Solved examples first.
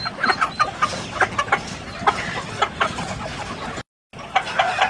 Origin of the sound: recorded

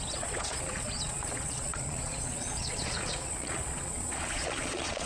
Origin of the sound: remade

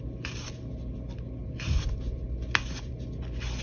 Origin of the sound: recorded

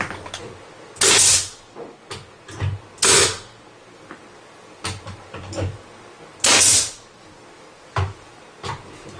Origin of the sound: recorded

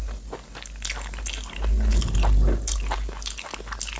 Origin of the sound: recorded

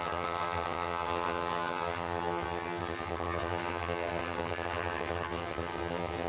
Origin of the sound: remade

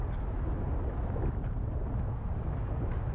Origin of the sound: recorded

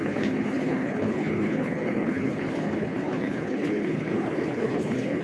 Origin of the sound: remade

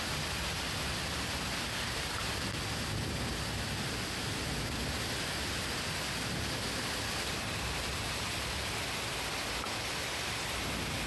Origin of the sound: recorded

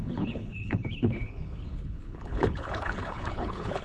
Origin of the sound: remade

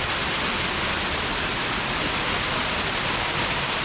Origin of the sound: remade